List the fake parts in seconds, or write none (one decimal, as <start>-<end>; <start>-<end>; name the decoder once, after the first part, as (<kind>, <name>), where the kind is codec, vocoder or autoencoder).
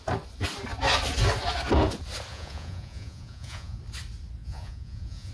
2.3-3.8 (vocoder, Vocos); 4.4-5.3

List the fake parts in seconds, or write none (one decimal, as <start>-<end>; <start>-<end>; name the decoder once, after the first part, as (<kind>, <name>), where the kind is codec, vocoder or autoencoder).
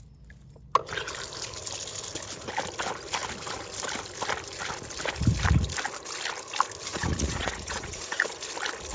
6.9-8.3 (vocoder, Vocos)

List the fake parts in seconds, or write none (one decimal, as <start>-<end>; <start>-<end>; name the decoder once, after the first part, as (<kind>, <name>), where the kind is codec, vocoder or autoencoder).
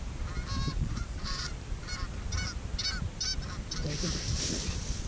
0.7-1.5 (vocoder, Vocos)